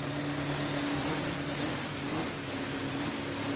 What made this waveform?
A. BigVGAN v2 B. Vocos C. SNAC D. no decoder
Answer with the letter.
D